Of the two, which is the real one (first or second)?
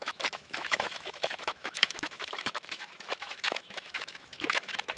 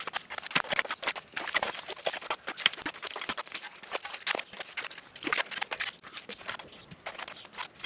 second